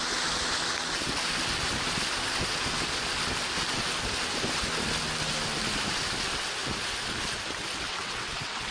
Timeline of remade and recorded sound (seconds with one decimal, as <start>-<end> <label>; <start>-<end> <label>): 0.0-7.9 recorded; 7.9-8.7 remade